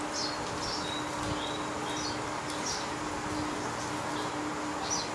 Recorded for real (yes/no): yes